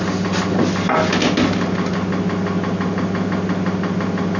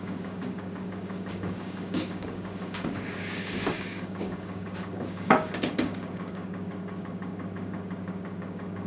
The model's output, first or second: second